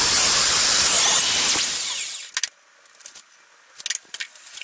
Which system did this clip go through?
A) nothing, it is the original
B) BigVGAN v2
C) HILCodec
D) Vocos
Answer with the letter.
A